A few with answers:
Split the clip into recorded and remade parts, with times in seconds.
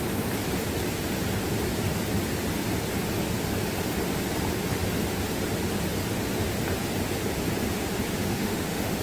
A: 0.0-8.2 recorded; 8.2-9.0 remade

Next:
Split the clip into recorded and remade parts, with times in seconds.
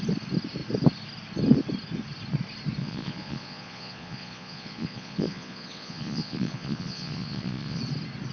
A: 0.0-2.8 recorded; 2.8-7.8 remade; 7.8-8.3 recorded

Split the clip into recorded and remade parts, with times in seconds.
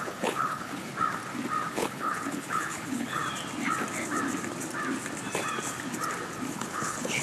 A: 0.0-0.9 remade; 0.9-1.7 recorded; 1.7-3.2 remade; 3.2-6.5 recorded; 6.5-7.2 remade